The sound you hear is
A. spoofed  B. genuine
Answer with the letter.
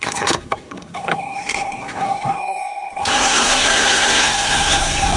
A